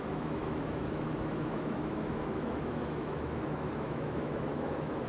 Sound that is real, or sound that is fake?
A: fake